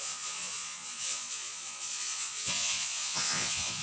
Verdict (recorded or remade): remade